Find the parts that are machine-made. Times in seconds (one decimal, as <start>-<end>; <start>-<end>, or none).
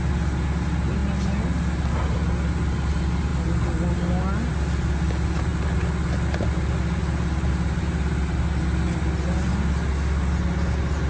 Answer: none